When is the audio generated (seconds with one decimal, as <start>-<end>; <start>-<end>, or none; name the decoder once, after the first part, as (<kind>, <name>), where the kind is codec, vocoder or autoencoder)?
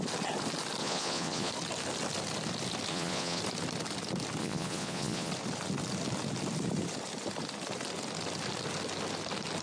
0.8-1.5 (vocoder, Vocos); 2.9-3.4; 4.4-5.3